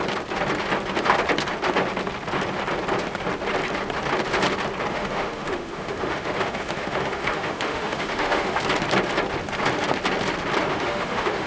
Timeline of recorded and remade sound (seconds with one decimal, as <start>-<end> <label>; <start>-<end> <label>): 0.0-4.9 recorded; 4.9-8.6 remade; 8.6-10.7 recorded; 10.7-11.5 remade